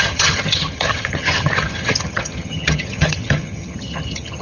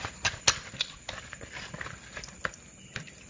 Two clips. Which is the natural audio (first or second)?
second